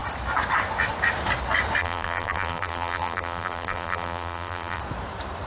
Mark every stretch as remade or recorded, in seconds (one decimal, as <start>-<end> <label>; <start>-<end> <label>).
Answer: 0.0-1.8 recorded; 1.8-4.8 remade; 4.8-5.5 recorded